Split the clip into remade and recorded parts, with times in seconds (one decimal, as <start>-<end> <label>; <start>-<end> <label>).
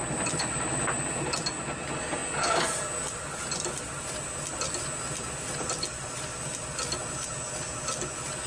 0.0-8.5 recorded